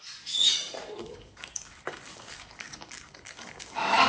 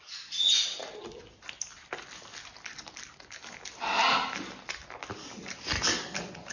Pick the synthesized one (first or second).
first